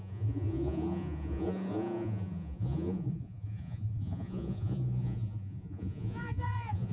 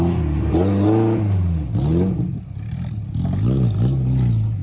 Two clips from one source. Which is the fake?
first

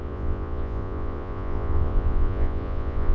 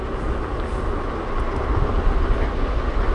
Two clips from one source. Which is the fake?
first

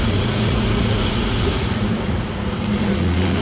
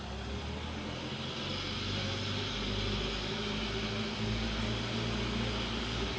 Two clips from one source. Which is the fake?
first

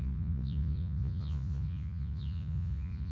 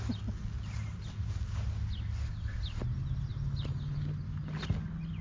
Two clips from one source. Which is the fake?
first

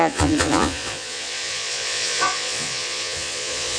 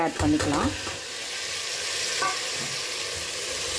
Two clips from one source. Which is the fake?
first